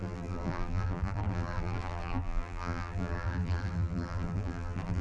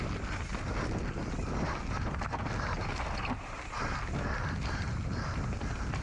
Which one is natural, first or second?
second